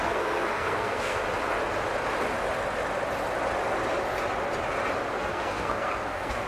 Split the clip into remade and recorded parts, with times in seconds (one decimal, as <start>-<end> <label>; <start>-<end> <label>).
0.0-1.2 remade; 1.2-5.1 recorded; 5.1-6.5 remade